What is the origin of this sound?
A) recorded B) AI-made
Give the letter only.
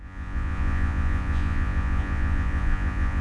B